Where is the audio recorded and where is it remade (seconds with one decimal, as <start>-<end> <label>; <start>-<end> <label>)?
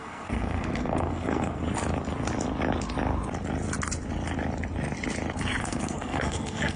0.0-1.6 remade; 1.6-5.6 recorded; 5.6-6.8 remade